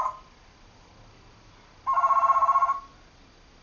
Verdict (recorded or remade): recorded